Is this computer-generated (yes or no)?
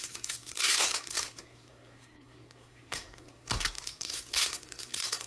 yes